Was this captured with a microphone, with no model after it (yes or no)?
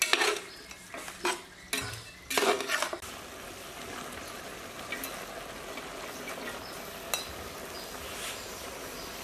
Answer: yes